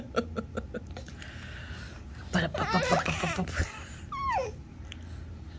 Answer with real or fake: real